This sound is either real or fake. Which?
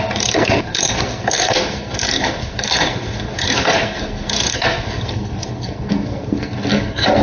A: fake